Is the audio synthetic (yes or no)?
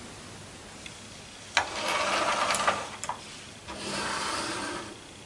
no